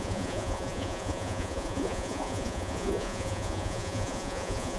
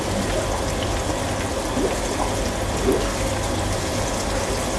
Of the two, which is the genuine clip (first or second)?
second